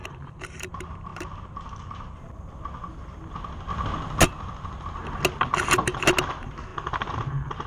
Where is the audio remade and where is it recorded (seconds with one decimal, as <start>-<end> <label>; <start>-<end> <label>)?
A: 0.0-0.7 remade; 0.7-1.1 recorded; 1.1-2.3 remade; 2.3-7.7 recorded